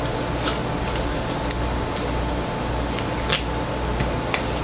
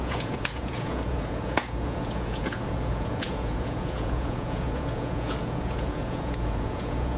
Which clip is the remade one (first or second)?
second